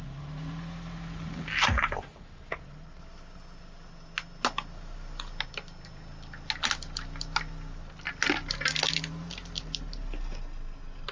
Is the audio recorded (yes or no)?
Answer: yes